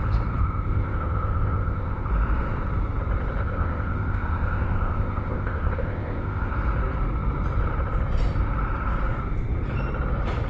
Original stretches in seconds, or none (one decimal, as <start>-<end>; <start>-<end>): 0.0-0.4; 2.1-3.4; 6.5-10.5

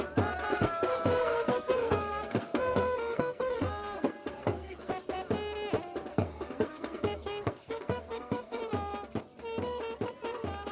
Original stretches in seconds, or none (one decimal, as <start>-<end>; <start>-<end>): 0.0-0.5; 4.9-6.1; 8.6-10.7

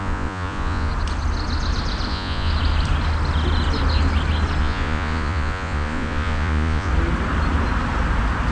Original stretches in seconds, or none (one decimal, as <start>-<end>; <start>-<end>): 0.9-2.1; 2.5-4.6; 6.9-8.5